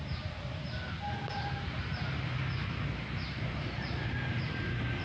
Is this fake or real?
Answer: fake